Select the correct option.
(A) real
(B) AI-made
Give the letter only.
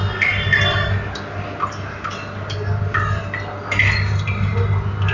A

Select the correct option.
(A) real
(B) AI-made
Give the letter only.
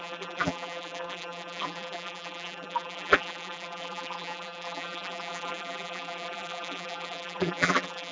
B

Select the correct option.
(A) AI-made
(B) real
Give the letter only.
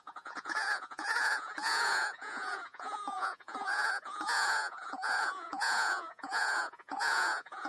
A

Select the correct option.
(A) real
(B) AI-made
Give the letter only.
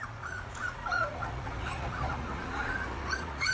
B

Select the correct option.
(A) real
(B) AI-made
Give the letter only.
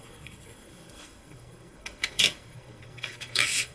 B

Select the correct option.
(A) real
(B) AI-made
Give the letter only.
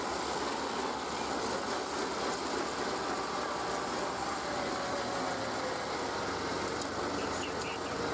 A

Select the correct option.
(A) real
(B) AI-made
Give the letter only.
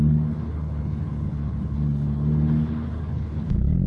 B